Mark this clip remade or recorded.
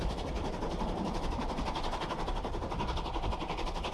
recorded